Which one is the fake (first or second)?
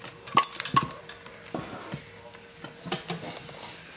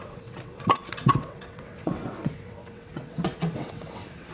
second